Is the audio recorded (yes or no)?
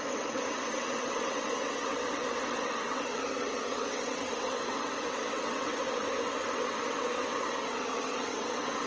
no